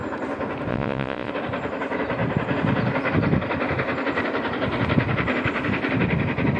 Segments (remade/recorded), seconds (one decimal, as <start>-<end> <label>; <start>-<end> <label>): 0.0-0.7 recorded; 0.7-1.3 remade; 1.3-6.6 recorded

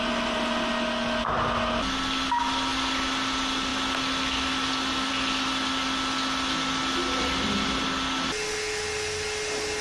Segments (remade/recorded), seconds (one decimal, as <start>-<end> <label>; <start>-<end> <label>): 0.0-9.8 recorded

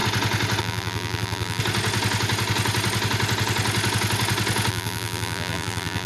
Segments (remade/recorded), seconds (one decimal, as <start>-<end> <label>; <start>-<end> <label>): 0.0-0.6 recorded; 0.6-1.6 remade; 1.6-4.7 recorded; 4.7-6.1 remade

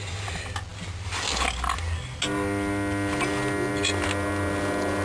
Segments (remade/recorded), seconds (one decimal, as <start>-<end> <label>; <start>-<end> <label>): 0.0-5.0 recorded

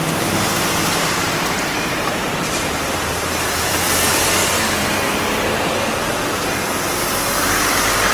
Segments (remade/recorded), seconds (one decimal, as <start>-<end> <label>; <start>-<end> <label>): 0.0-0.5 recorded; 0.5-2.8 remade; 2.8-8.1 recorded